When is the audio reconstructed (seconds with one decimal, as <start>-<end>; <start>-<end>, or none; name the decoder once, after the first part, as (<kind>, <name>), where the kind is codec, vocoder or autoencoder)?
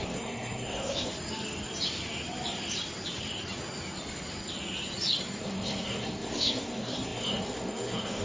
0.0-1.1 (codec, SNAC); 5.4-8.2